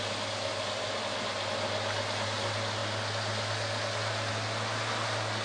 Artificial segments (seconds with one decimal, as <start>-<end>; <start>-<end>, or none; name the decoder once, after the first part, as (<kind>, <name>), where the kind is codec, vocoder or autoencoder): none